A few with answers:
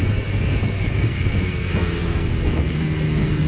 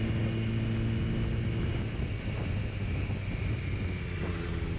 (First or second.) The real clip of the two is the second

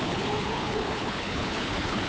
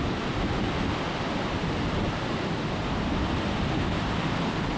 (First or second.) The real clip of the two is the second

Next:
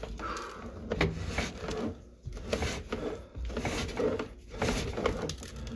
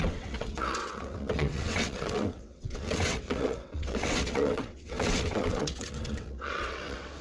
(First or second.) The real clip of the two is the first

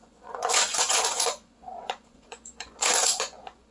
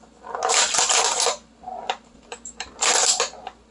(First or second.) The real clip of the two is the second